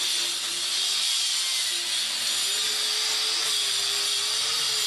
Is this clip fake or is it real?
real